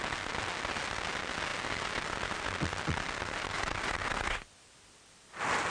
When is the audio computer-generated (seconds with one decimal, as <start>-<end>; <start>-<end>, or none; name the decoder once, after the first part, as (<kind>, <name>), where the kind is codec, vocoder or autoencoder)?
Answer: none